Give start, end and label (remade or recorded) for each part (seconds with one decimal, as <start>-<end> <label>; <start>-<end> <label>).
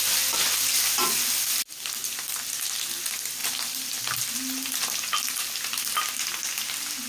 0.0-3.4 recorded; 3.4-4.0 remade; 4.0-7.1 recorded